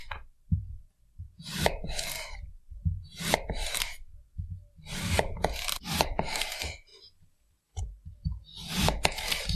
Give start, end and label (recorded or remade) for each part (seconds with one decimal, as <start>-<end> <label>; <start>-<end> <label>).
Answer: 0.0-6.9 remade; 6.9-7.8 recorded; 7.8-8.5 remade; 8.5-9.1 recorded; 9.1-9.6 remade

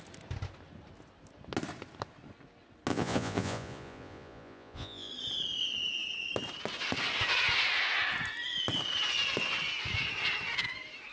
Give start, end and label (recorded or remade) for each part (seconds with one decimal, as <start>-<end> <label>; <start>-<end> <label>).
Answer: 0.0-2.9 recorded; 2.9-5.1 remade; 5.1-11.1 recorded

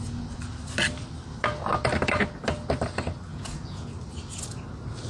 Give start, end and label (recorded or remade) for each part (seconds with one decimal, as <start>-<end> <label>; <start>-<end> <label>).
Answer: 0.0-3.3 recorded; 3.3-3.9 remade; 3.9-5.1 recorded

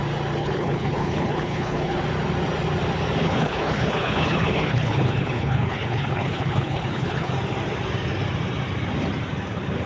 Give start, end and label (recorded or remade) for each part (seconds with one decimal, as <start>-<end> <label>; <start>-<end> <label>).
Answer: 0.0-0.4 recorded; 0.4-2.0 remade; 2.0-3.2 recorded; 3.2-7.3 remade; 7.3-9.9 recorded

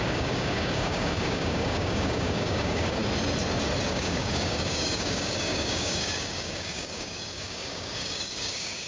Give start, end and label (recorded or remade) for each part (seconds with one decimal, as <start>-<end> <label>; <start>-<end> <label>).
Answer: 0.0-3.0 remade; 3.0-3.9 recorded; 3.9-8.9 remade

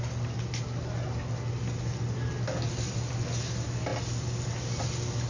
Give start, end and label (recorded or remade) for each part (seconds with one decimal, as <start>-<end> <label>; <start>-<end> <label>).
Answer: 0.0-5.3 recorded